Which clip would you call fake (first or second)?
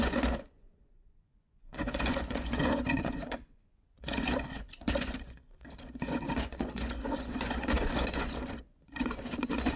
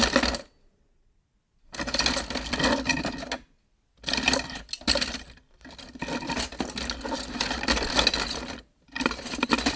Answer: first